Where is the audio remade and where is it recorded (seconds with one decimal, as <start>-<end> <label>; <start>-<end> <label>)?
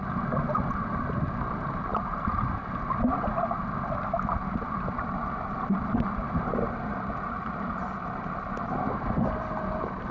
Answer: 0.0-10.1 recorded